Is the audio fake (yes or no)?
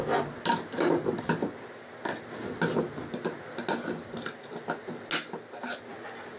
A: no